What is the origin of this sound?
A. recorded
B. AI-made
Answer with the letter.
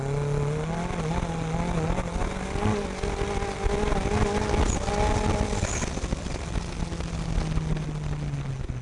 A